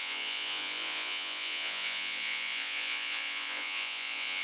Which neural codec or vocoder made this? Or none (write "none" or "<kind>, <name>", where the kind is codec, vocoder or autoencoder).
vocoder, Vocos